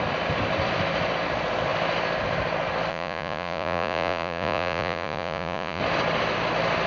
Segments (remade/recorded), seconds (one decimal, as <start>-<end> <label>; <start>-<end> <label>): 0.0-2.9 recorded; 2.9-5.8 remade; 5.8-6.9 recorded